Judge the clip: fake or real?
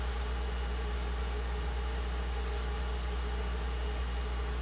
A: real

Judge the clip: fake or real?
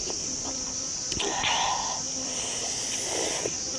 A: real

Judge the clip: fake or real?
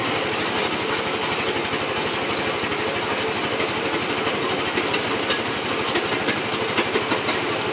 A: real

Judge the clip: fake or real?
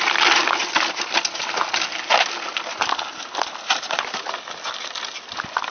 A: real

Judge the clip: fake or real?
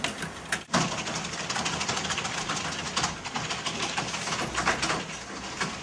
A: real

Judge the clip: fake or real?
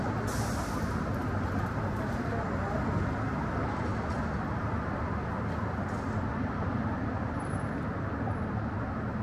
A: real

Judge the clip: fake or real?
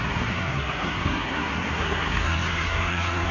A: fake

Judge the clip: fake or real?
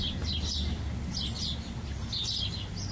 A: real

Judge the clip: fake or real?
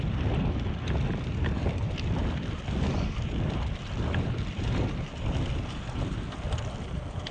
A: real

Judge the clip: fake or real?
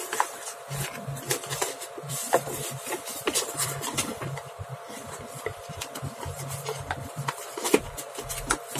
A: fake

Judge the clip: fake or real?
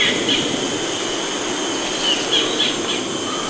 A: real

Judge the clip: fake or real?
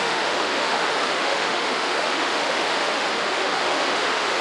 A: fake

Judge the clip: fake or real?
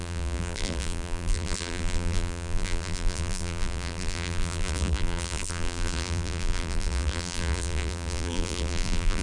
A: fake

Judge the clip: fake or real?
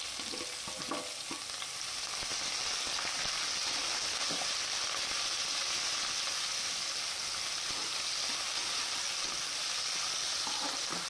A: real